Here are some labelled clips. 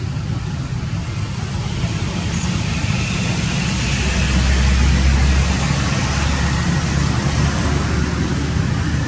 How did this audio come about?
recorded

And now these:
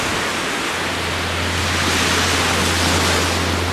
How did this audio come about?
recorded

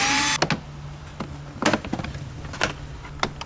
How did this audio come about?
recorded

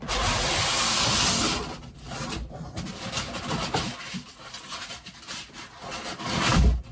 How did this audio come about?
recorded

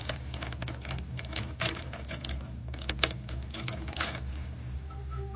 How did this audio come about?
recorded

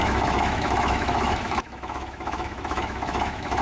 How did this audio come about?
remade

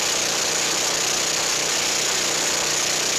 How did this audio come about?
recorded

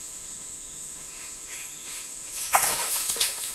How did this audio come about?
remade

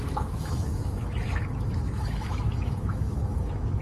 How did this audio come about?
remade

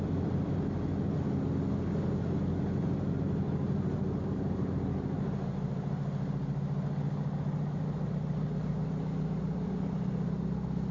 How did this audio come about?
recorded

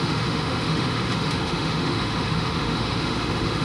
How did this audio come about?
remade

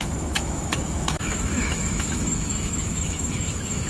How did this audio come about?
remade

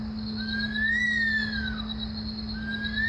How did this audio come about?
recorded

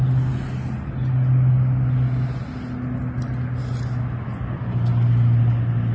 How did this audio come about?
recorded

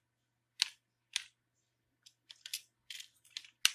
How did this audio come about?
recorded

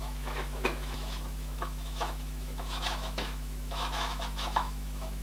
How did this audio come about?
remade